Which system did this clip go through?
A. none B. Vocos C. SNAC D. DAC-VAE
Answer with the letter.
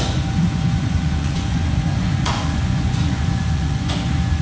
B